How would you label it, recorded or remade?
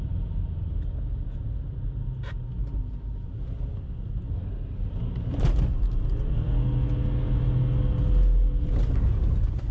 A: recorded